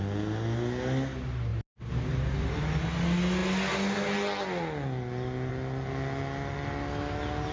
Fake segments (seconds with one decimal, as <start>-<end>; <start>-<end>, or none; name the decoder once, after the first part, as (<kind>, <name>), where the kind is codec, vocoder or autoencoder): none